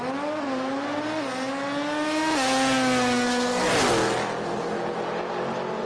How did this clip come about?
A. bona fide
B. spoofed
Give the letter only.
A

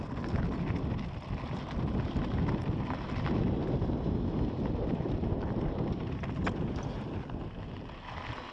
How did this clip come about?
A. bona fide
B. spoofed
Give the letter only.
A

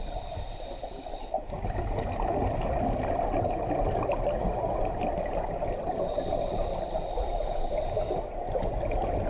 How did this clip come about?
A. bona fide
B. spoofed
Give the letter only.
A